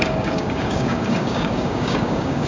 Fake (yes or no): yes